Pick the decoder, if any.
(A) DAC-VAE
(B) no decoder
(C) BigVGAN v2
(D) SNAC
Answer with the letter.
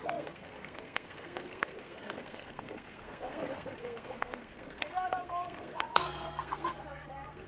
D